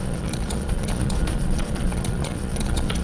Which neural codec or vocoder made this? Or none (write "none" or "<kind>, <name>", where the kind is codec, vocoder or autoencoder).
vocoder, Vocos